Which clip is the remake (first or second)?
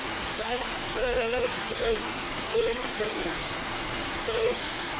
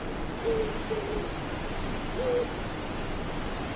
first